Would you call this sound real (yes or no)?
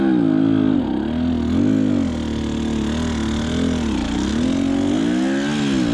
yes